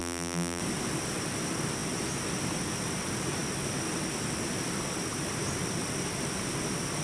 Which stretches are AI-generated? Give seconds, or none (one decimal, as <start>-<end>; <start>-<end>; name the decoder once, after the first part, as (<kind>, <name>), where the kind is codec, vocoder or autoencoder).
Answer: 0.0-0.6 (vocoder, BigVGAN v2)